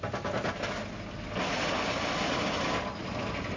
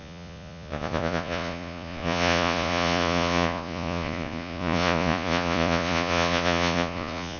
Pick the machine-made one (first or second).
second